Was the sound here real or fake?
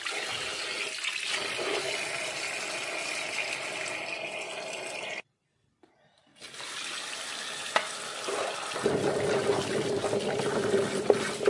real